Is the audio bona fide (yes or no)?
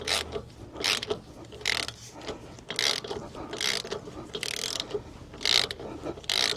yes